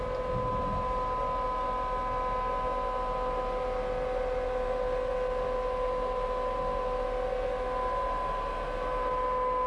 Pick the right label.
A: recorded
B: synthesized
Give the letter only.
A